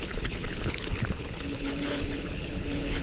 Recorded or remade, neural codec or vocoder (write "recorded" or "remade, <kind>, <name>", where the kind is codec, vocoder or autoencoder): remade, codec, HILCodec